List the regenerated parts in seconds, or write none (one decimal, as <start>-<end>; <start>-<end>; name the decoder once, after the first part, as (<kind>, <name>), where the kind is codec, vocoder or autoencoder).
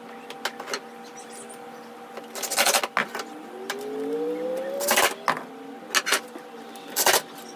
none